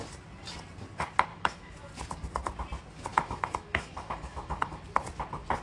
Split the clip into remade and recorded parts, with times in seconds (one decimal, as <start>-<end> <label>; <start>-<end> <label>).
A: 0.0-1.3 recorded; 1.3-1.9 remade; 1.9-3.1 recorded; 3.1-4.8 remade; 4.8-5.6 recorded